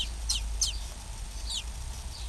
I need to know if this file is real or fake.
real